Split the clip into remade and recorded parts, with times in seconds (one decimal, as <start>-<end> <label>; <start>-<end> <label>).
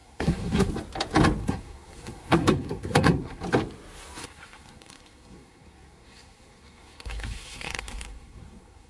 0.0-0.7 remade; 0.7-1.4 recorded; 1.4-3.4 remade; 3.4-4.2 recorded; 4.2-8.9 remade